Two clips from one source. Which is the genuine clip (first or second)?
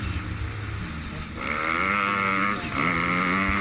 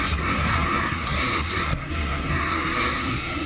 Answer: first